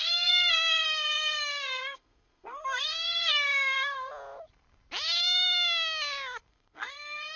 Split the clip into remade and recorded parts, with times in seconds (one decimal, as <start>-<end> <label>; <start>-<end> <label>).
0.0-4.1 remade; 4.1-6.5 recorded; 6.5-7.4 remade